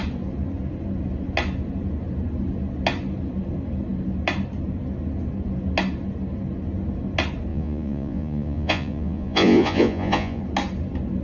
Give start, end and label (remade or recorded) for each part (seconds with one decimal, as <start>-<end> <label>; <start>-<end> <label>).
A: 0.0-7.5 recorded; 7.5-10.4 remade; 10.4-11.2 recorded

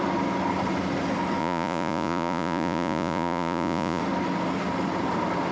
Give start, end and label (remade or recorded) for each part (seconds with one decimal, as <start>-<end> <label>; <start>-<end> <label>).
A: 0.0-1.4 recorded; 1.4-4.0 remade; 4.0-5.5 recorded

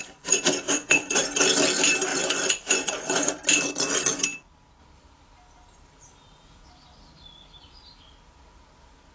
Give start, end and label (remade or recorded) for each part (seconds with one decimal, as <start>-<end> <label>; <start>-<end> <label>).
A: 0.0-1.2 remade; 1.2-2.1 recorded; 2.1-3.3 remade; 3.3-9.1 recorded